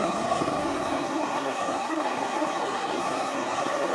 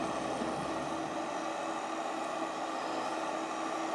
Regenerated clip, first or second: first